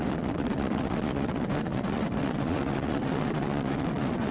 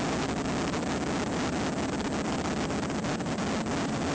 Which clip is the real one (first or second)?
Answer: second